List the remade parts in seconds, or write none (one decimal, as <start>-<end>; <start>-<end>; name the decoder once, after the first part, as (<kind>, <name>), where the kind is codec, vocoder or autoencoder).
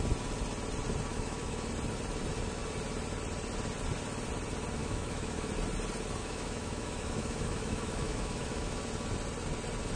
1.1-1.7 (autoencoder, DAC-VAE); 4.8-5.5; 6.2-8.8